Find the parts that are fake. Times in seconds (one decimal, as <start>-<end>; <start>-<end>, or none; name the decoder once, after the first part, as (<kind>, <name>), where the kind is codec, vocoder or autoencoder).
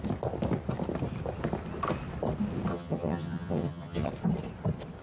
2.7-4.1 (vocoder, HiFi-GAN)